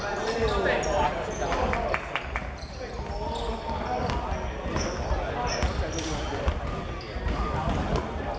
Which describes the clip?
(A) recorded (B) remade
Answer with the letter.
A